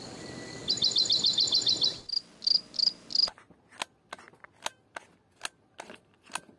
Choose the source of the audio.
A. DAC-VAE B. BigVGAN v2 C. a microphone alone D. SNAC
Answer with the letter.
C